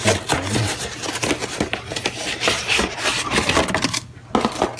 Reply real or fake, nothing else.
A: real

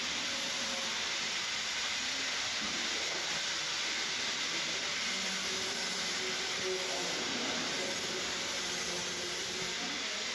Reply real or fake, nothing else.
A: real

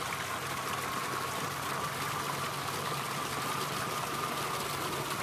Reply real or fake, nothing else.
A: real